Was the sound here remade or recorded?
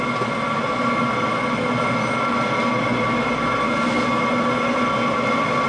recorded